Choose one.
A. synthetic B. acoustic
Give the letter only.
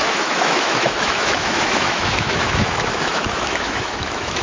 A